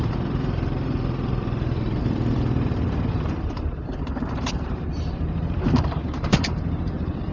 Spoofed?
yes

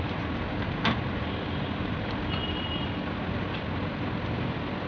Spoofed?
no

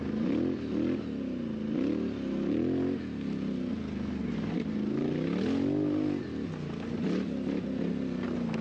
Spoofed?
no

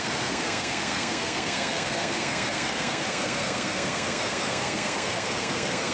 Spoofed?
yes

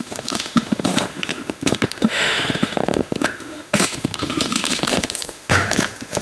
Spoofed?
yes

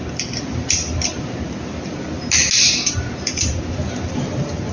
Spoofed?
no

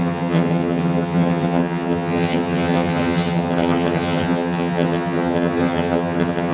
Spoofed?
yes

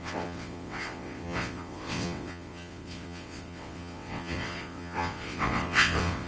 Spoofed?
yes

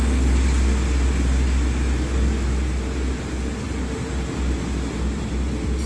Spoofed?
no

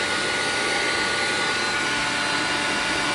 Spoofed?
no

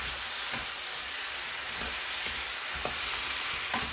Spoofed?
no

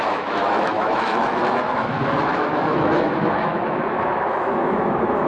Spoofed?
yes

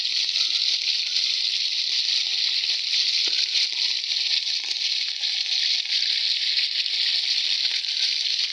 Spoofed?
no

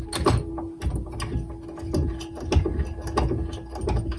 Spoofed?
no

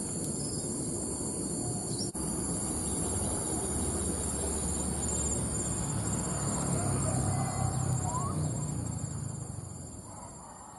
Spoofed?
no